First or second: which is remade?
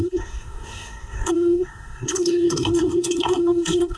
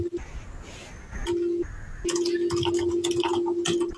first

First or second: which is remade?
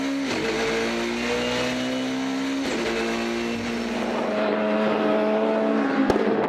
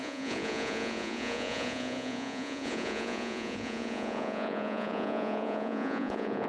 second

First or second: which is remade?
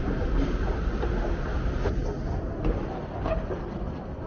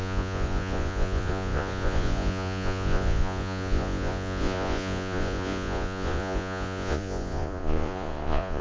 second